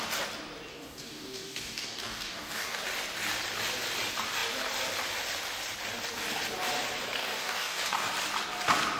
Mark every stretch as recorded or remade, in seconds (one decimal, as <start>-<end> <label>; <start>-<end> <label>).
0.0-0.7 recorded; 0.7-2.8 remade; 2.8-7.2 recorded; 7.2-8.1 remade; 8.1-9.0 recorded